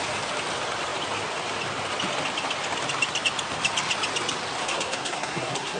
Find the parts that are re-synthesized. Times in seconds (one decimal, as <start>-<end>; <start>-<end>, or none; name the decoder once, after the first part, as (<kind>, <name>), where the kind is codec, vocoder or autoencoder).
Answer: 4.6-5.8 (codec, SNAC)